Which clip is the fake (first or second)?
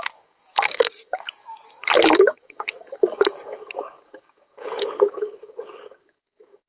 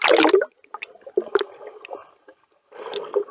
first